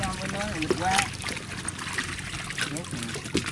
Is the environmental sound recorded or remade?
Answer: recorded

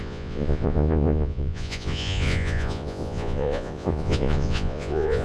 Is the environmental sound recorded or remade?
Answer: remade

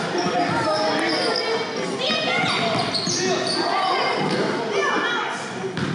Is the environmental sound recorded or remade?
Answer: recorded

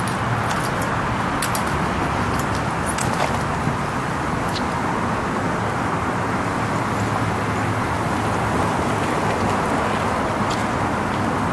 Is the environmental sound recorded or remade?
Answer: recorded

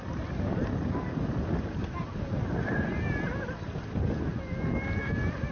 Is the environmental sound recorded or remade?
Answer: recorded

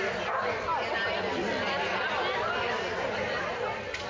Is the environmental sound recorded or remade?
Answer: recorded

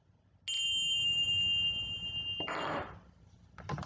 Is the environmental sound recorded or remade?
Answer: recorded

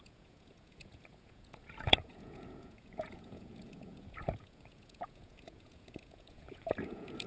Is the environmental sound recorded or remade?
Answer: remade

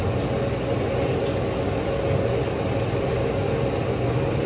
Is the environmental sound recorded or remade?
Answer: recorded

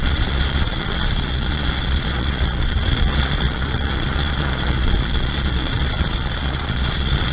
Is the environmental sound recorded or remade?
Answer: remade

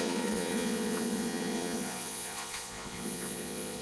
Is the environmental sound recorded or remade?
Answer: remade